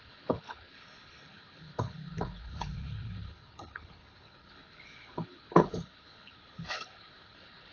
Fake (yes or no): yes